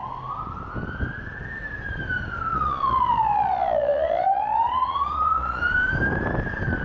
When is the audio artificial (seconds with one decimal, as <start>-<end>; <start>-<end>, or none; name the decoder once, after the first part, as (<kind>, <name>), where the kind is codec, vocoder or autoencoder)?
2.5-5.6 (vocoder, Vocos)